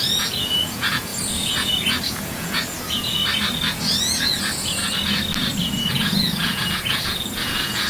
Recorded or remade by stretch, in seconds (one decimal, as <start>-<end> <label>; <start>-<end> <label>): 0.0-3.2 remade; 3.2-4.0 recorded; 4.0-4.8 remade; 4.8-5.9 recorded; 5.9-7.9 remade